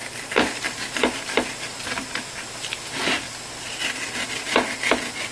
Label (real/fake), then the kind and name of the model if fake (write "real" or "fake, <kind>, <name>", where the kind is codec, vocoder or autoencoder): real